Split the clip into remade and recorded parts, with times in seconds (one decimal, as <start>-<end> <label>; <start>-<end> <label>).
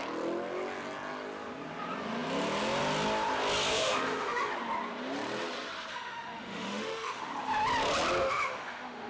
0.0-3.7 recorded; 3.7-4.5 remade; 4.5-5.9 recorded; 5.9-7.3 remade; 7.3-8.2 recorded; 8.2-9.1 remade